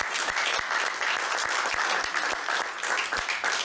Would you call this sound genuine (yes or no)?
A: yes